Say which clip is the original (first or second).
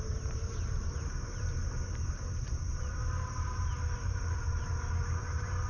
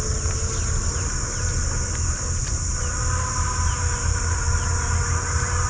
second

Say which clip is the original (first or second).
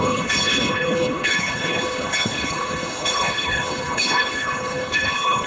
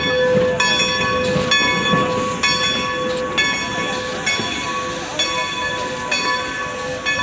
second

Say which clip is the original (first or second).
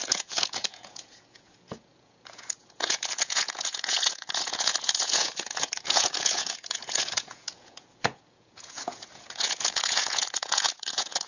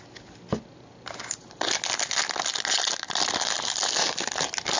second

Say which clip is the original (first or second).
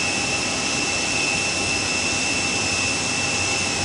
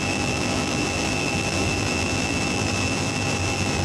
first